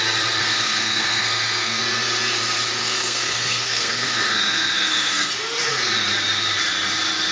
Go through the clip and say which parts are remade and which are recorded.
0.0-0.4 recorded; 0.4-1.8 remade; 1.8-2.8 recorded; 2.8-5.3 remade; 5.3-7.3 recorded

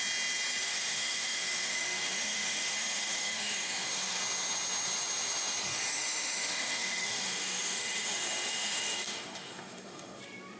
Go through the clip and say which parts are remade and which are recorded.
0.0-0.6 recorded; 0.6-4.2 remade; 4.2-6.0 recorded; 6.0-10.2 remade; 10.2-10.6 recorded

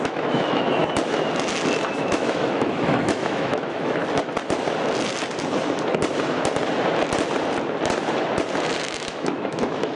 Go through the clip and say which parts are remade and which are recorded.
0.0-0.8 remade; 0.8-2.0 recorded; 2.0-4.0 remade; 4.0-8.8 recorded; 8.8-10.0 remade

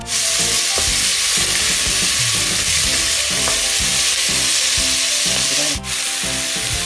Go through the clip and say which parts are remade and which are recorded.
0.0-0.5 remade; 0.5-6.9 recorded

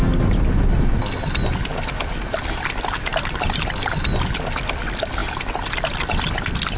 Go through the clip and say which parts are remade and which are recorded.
0.0-6.8 recorded